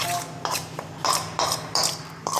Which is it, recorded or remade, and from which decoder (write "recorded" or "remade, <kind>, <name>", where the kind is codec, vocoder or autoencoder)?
remade, vocoder, BigVGAN v2